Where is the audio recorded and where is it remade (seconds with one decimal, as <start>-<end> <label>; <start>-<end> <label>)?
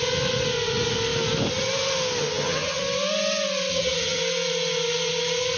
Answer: 0.0-2.2 recorded; 2.2-2.8 remade; 2.8-3.7 recorded; 3.7-4.2 remade; 4.2-5.6 recorded